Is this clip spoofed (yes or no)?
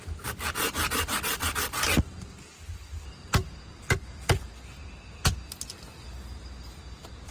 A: no